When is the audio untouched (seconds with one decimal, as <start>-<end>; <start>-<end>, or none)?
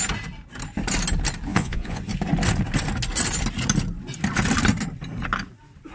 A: 0.0-1.5; 2.0-5.9